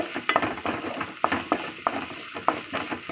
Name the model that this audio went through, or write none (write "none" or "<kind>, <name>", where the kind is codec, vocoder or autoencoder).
none